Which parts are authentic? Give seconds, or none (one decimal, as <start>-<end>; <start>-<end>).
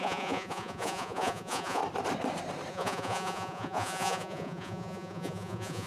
1.8-2.7